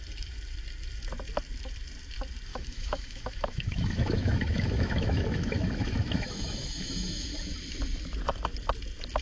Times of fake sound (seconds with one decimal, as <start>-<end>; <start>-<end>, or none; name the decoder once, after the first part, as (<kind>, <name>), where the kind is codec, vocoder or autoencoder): 2.5-7.2 (autoencoder, DAC-VAE)